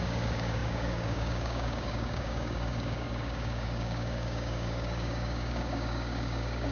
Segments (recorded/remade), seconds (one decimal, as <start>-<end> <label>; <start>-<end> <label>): 0.0-6.7 remade